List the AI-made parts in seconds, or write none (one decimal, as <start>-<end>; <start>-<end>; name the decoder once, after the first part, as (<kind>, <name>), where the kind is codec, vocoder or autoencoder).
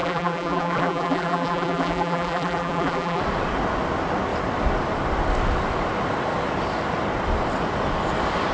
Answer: 0.0-3.2 (vocoder, BigVGAN v2)